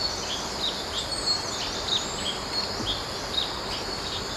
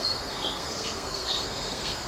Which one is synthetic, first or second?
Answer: second